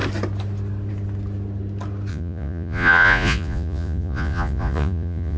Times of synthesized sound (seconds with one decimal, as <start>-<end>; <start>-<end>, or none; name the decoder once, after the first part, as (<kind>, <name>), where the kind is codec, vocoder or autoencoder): 2.1-5.4 (vocoder, Vocos)